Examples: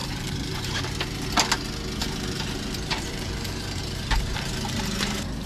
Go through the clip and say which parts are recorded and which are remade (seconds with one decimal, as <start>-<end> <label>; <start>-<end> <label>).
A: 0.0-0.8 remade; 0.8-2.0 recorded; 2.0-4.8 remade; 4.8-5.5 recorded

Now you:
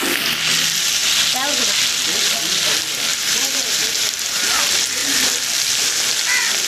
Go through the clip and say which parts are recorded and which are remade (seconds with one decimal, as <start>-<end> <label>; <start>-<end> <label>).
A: 0.0-3.1 recorded; 3.1-4.5 remade; 4.5-6.7 recorded

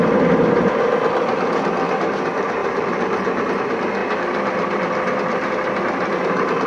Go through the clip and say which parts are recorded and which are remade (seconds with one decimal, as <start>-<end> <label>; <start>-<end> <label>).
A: 0.0-2.6 recorded; 2.6-3.6 remade; 3.6-6.7 recorded

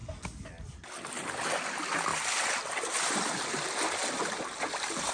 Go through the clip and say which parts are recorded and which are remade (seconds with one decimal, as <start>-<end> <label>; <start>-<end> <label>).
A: 0.0-2.1 recorded; 2.1-5.1 remade